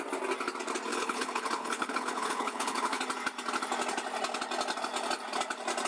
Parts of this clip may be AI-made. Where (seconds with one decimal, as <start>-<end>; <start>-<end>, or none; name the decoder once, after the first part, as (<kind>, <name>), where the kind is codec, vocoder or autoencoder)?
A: 0.9-3.0 (codec, HILCodec)